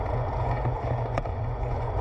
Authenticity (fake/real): fake